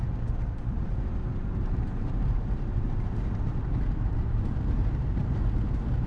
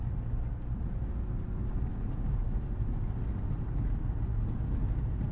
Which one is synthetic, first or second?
first